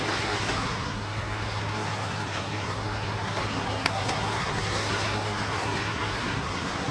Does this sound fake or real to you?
fake